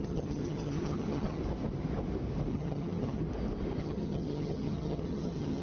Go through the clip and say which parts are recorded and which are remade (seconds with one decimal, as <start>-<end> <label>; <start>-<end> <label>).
0.0-1.4 remade; 1.4-2.5 recorded; 2.5-3.2 remade; 3.2-3.8 recorded; 3.8-5.6 remade